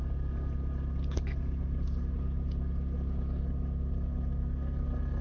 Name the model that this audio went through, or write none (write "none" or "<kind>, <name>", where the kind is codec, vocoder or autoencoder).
none